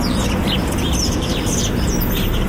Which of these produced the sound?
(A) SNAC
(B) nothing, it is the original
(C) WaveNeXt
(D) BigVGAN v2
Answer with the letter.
D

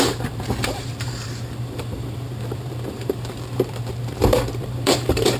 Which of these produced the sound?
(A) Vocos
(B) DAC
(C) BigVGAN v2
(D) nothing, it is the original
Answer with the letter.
C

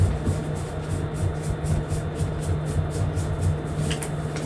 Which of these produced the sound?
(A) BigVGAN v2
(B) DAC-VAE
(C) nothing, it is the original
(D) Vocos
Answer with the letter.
C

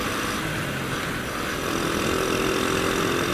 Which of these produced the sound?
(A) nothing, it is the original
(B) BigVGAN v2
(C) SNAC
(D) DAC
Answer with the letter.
A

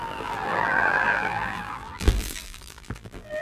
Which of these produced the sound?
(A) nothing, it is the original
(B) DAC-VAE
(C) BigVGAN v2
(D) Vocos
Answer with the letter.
C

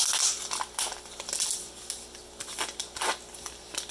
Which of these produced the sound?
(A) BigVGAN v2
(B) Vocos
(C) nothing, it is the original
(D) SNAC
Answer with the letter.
C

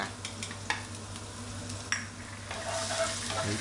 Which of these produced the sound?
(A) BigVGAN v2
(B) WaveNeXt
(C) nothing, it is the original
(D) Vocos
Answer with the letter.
C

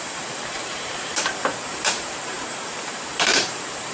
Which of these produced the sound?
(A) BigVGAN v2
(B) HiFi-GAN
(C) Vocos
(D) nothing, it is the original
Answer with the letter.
A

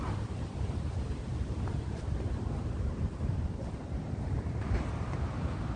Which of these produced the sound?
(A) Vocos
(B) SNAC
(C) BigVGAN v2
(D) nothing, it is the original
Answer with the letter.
C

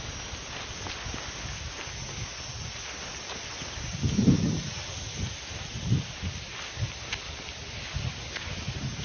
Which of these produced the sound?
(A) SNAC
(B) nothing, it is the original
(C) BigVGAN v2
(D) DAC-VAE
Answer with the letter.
B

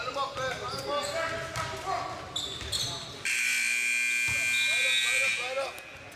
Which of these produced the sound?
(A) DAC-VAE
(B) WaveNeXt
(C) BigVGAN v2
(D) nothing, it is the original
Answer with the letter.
D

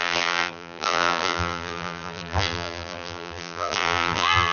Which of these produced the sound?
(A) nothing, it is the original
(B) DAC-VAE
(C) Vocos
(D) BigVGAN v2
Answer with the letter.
D